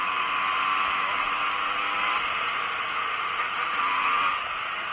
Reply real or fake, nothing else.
real